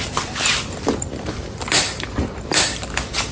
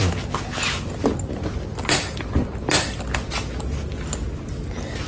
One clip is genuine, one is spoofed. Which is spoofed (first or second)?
first